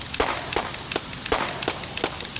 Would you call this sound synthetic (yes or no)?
no